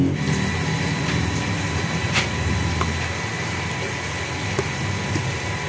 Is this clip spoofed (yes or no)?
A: no